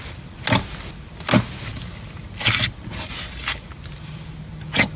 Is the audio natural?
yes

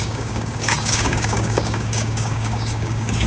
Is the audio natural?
no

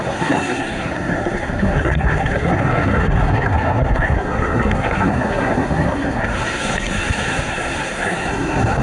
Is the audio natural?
no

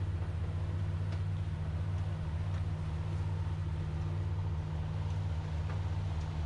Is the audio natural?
yes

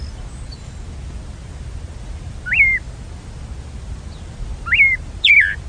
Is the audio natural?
yes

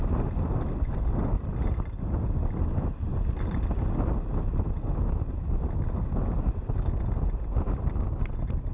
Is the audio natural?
yes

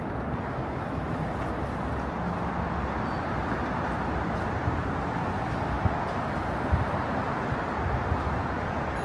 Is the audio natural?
yes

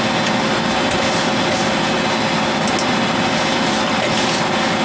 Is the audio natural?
yes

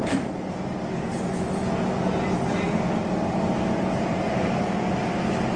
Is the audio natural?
yes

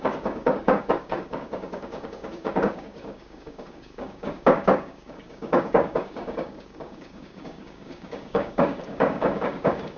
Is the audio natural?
no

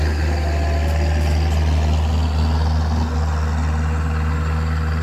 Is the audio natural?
yes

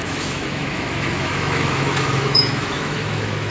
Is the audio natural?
no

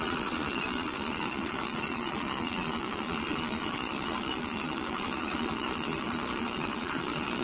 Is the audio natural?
no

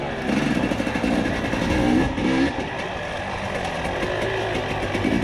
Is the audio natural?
yes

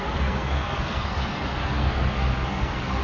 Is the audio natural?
no